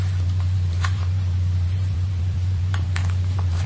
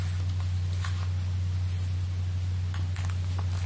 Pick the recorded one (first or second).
second